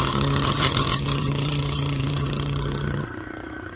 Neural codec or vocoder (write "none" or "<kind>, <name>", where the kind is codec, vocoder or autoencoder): vocoder, HiFi-GAN